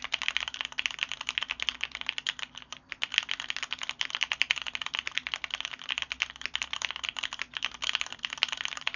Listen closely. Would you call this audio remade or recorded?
recorded